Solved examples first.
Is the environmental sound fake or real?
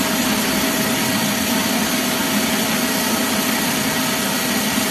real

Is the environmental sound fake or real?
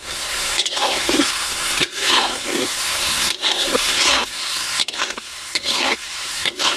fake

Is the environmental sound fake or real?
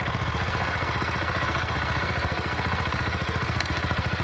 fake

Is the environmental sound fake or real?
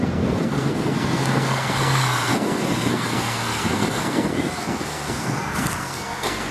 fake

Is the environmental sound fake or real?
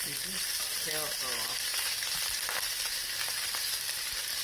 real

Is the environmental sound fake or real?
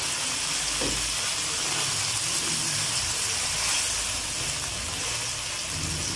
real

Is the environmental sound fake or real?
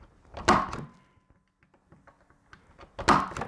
real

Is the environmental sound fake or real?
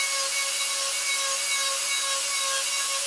real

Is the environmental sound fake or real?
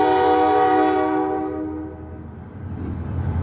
real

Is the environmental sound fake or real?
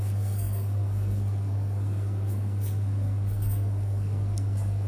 fake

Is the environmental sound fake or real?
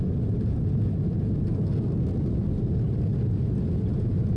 real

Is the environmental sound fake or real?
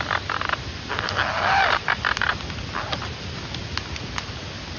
real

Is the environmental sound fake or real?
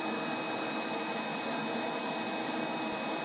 real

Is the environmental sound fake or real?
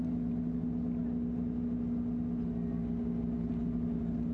real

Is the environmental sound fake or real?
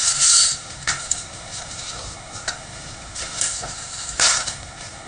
fake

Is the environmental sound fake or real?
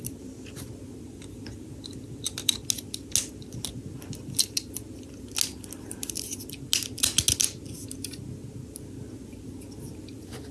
real